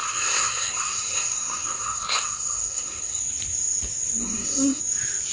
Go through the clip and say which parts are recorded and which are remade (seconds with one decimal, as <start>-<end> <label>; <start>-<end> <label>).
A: 0.0-3.2 remade; 3.2-4.2 recorded; 4.2-4.8 remade; 4.8-5.3 recorded